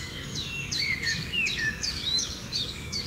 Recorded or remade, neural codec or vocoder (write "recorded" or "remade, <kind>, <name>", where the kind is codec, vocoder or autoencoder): remade, codec, DAC